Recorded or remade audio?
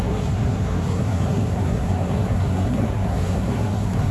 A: remade